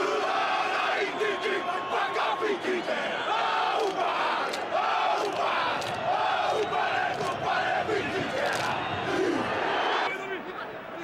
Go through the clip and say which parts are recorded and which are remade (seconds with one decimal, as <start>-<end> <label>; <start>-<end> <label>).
0.0-11.0 recorded

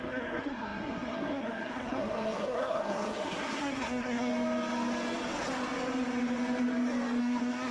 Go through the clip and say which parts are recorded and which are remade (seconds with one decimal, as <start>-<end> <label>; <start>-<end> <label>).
0.0-4.3 remade; 4.3-7.2 recorded; 7.2-7.7 remade